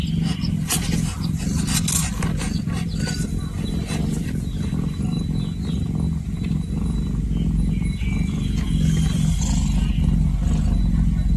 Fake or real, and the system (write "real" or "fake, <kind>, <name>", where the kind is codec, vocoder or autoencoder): real